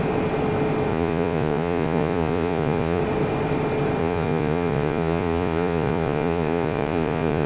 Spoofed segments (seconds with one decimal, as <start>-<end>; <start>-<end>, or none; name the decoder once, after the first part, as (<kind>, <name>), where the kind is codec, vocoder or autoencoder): 0.9-3.0 (vocoder, Vocos); 4.0-7.5